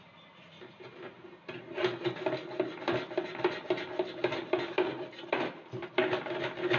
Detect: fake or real real